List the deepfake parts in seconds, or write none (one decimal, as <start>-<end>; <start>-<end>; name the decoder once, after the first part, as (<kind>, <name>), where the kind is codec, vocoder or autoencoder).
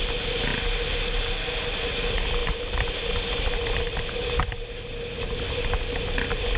none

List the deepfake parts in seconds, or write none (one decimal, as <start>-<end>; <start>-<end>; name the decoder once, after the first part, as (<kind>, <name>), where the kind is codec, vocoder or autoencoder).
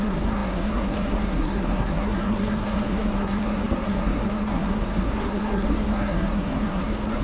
0.0-7.2 (codec, SNAC)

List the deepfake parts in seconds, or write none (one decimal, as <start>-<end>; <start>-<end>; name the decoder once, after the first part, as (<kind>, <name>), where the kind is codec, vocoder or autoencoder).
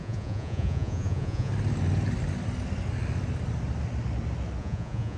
0.0-1.5 (vocoder, Vocos); 4.6-5.2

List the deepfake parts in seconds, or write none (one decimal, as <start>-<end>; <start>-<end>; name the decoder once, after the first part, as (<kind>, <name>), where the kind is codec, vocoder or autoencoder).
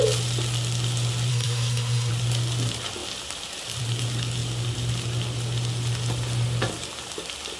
1.3-2.1 (codec, SNAC)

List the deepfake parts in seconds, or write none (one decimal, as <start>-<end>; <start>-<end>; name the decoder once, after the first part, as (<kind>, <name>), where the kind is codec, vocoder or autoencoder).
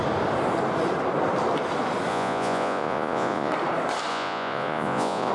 2.1-3.5 (vocoder, Vocos); 4.1-5.3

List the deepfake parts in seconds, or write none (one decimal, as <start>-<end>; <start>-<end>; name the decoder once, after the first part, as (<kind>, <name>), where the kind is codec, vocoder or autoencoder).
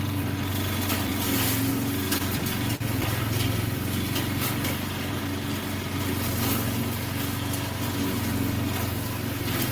none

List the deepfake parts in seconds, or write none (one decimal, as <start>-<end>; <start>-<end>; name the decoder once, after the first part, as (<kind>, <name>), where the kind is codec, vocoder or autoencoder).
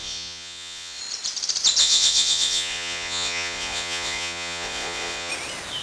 0.0-1.0 (vocoder, Vocos); 1.8-5.3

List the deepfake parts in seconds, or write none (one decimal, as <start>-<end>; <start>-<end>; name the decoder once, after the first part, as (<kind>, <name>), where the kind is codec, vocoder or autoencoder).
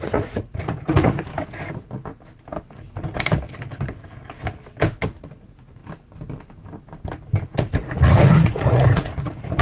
0.0-1.3 (vocoder, Vocos); 5.2-5.8; 7.6-9.6